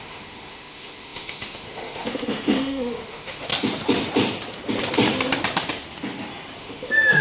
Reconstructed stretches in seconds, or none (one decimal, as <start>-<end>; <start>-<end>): 0.0-3.5; 6.6-7.2